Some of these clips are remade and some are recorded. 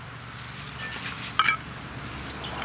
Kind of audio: recorded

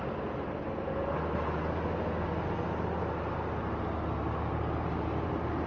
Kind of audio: recorded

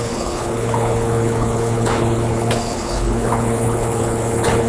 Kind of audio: remade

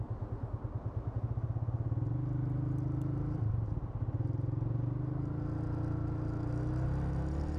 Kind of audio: recorded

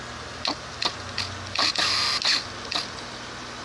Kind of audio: recorded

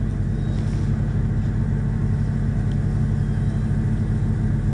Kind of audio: recorded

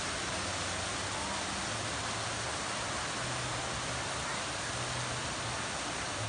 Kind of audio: recorded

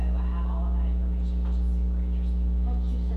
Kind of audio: recorded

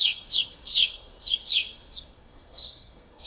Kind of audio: remade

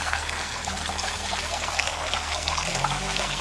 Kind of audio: remade